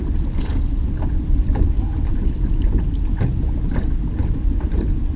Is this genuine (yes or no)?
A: yes